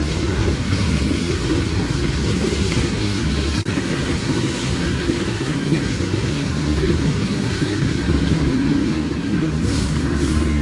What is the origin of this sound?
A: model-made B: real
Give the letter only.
A